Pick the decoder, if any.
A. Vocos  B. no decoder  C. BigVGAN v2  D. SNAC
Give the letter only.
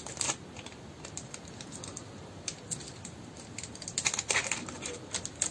B